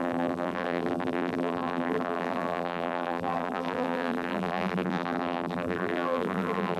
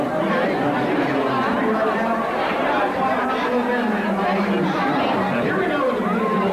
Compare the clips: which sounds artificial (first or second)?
first